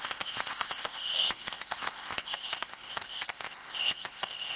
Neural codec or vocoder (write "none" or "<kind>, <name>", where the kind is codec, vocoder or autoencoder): codec, ZipCodec